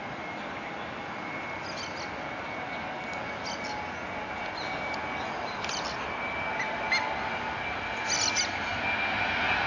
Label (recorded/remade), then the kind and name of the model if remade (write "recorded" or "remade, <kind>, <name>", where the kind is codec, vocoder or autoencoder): recorded